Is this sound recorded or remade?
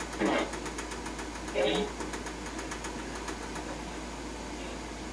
recorded